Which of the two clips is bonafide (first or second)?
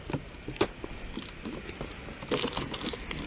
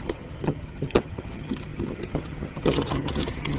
first